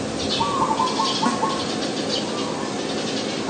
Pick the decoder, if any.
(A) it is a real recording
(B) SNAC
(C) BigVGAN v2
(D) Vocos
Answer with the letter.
A